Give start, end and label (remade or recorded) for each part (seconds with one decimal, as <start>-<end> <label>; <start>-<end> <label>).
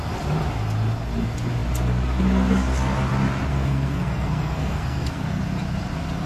0.0-3.5 recorded; 3.5-5.4 remade; 5.4-6.3 recorded